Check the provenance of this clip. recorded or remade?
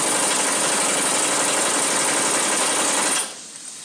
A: recorded